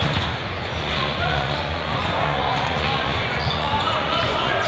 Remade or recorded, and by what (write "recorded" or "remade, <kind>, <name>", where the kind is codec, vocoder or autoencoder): remade, vocoder, Vocos